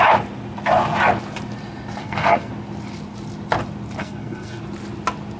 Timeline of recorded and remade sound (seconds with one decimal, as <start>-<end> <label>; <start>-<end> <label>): 0.0-2.0 recorded; 2.0-2.5 remade; 2.5-4.0 recorded; 4.0-4.6 remade; 4.6-5.4 recorded